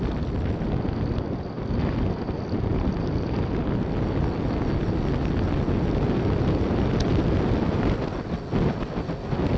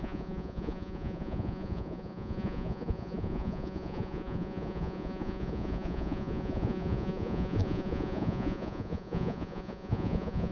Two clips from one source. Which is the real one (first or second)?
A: first